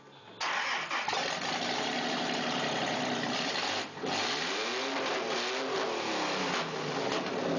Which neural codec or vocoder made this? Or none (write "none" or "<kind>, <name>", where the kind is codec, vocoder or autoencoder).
none